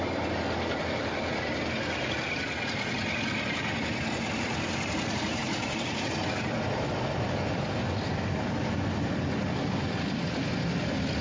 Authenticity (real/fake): real